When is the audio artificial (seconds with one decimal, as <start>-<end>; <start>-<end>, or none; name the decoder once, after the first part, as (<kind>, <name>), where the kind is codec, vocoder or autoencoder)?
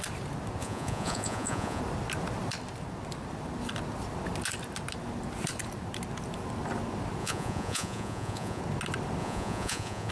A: 0.6-1.8 (vocoder, Vocos); 7.2-8.6; 9.2-10.1